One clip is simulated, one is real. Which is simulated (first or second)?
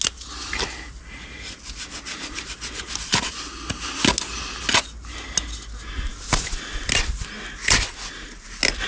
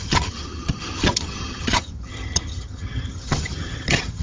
second